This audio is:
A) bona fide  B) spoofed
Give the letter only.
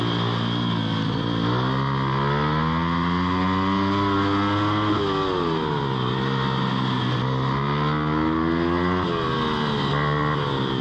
A